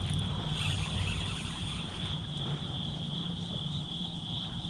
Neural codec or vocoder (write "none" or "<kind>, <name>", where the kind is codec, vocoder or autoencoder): vocoder, BigVGAN v2